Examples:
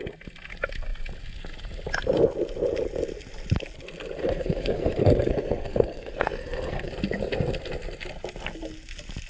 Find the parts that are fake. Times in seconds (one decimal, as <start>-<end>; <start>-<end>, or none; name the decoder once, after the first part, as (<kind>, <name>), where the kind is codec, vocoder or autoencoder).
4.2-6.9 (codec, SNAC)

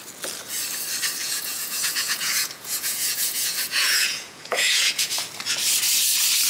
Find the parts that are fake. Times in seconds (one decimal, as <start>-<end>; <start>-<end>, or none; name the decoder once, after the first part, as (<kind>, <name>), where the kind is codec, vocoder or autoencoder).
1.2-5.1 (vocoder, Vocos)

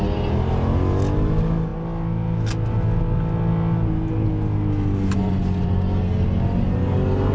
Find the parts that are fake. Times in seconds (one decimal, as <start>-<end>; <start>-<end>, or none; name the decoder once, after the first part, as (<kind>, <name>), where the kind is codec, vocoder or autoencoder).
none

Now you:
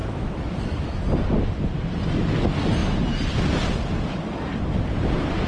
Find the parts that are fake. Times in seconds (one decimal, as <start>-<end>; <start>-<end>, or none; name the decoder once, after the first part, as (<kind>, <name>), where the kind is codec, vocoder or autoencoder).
0.0-1.0 (autoencoder, DAC-VAE)